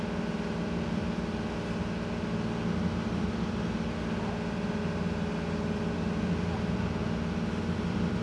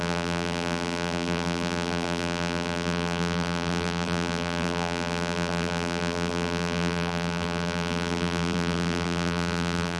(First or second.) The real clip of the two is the first